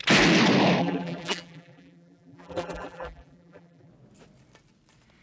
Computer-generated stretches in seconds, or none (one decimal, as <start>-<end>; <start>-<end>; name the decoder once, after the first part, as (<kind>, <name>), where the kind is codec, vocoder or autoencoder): 0.8-3.9 (vocoder, BigVGAN v2)